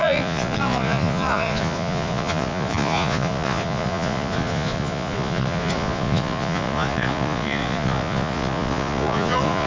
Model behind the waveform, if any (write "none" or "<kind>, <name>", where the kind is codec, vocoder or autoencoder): vocoder, Vocos